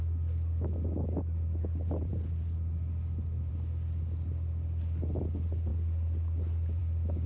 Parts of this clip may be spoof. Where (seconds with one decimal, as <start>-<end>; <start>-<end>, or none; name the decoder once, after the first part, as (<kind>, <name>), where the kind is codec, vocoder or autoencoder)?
none